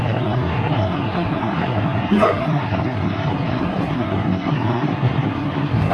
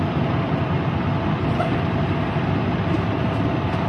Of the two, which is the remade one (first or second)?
first